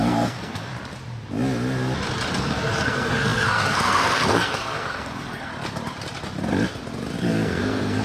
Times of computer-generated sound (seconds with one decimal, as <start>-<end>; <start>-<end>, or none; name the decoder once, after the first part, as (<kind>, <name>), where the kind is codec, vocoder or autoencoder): 0.0-0.7 (codec, SNAC); 2.4-5.5; 7.2-8.0